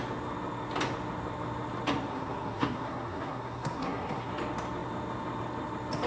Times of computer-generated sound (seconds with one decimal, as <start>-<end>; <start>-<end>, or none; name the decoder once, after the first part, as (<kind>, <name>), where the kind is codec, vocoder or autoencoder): 2.1-4.3 (codec, SNAC)